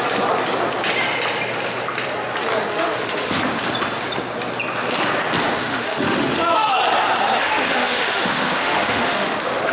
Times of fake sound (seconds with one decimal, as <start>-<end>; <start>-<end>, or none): 2.7-3.4; 5.6-6.8; 7.4-9.7